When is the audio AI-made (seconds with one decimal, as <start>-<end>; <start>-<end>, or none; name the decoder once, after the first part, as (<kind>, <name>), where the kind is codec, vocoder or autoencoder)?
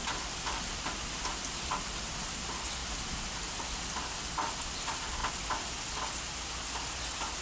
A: none